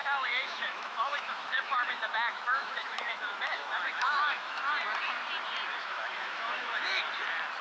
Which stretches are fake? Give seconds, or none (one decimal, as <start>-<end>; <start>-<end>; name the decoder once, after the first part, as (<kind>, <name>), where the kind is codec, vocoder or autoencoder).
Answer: 0.0-4.6 (autoencoder, DAC-VAE); 5.8-7.0